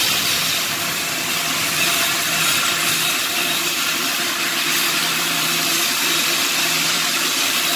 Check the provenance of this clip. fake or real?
fake